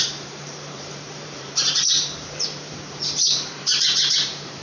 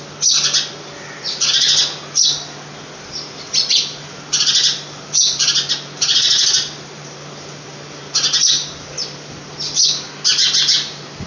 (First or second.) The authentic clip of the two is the second